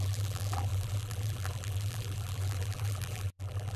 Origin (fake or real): fake